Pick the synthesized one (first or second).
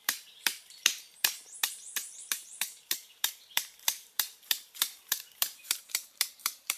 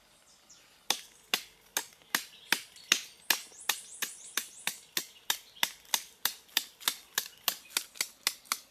first